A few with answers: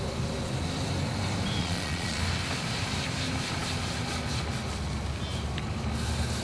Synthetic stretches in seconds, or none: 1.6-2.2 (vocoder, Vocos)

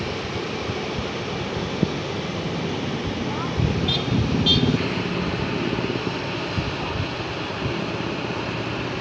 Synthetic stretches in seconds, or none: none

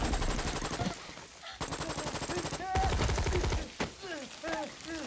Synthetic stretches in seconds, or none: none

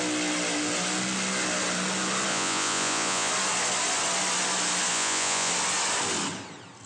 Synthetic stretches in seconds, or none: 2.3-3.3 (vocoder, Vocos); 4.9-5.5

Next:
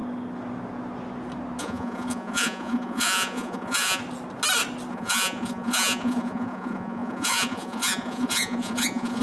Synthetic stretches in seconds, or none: 1.6-4.0 (vocoder, Vocos); 4.9-9.2

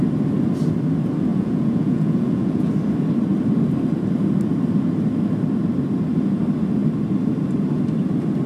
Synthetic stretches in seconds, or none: 1.3-2.7 (vocoder, Vocos)

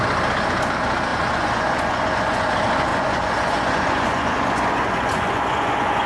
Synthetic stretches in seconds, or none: 1.1-2.5 (vocoder, Vocos); 2.9-6.1